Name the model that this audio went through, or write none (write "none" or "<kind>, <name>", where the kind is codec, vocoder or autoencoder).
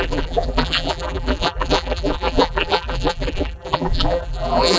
vocoder, BigVGAN v2